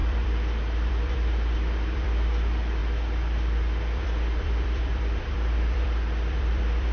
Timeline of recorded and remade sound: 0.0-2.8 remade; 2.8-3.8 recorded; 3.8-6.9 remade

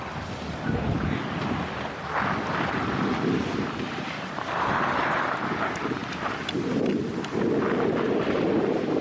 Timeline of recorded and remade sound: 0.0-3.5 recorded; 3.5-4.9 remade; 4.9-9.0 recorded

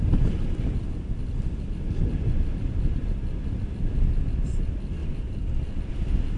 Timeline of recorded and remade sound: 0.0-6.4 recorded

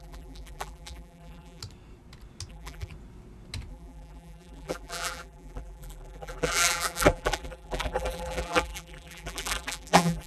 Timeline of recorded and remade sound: 0.0-1.6 remade; 1.6-2.5 recorded; 2.5-2.9 remade; 2.9-3.7 recorded; 3.7-10.3 remade

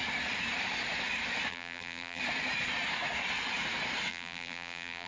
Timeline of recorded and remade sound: 0.0-1.5 recorded; 1.5-2.2 remade; 2.2-4.1 recorded; 4.1-5.1 remade

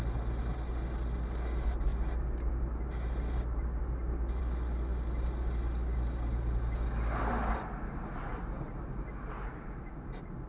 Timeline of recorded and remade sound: 0.0-10.5 recorded

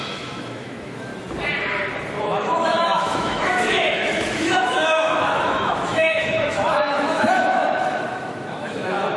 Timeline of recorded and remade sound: 0.0-1.1 remade; 1.1-2.2 recorded; 2.2-9.2 remade